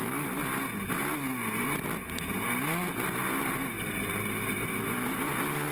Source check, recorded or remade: recorded